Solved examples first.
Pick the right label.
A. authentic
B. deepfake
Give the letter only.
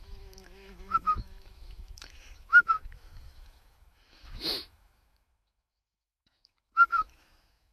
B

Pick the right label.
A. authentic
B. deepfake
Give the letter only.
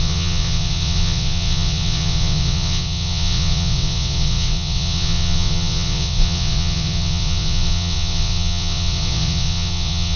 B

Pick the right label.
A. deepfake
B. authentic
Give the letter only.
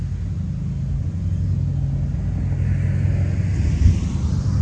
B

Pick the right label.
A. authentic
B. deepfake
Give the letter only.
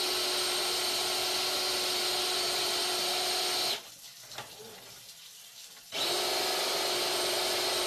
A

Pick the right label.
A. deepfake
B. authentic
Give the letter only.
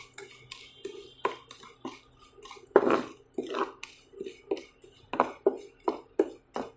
B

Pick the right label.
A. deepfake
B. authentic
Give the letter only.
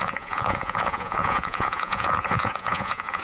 A